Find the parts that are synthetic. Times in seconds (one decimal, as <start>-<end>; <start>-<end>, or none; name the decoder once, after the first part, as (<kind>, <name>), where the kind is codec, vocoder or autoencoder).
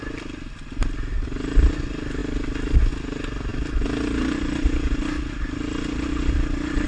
none